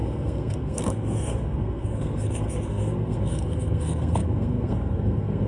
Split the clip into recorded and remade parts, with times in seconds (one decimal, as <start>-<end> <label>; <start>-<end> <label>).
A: 0.0-5.5 remade